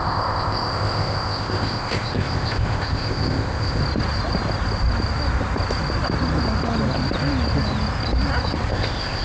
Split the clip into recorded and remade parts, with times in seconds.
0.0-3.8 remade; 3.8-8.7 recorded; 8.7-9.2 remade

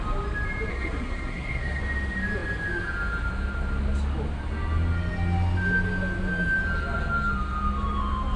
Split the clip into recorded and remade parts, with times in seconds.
0.0-0.7 recorded; 0.7-1.8 remade; 1.8-8.4 recorded

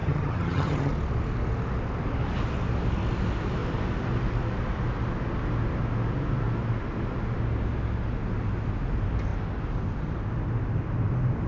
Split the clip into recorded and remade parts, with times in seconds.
0.0-0.9 remade; 0.9-11.5 recorded